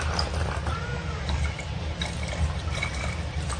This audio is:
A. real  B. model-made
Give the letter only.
A